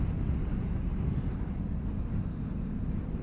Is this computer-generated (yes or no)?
no